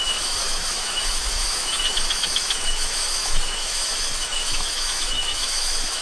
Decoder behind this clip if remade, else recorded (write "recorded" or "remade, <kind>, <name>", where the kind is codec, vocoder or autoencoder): remade, autoencoder, DAC-VAE